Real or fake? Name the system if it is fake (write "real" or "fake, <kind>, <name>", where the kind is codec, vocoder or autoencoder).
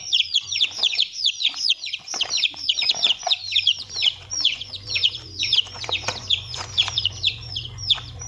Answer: fake, vocoder, Vocos